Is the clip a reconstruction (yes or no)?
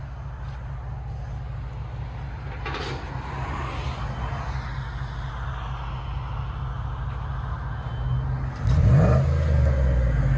no